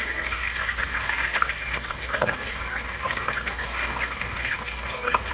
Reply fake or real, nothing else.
fake